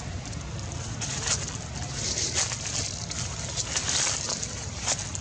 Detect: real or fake real